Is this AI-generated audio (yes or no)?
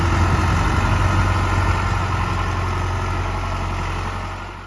no